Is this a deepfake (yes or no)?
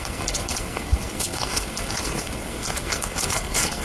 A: yes